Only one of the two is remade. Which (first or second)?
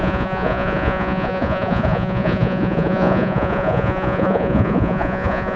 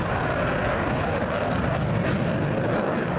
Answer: first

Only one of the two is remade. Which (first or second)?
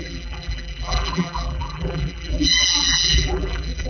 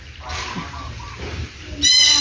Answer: first